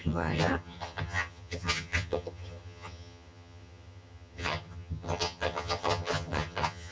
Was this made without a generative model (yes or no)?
no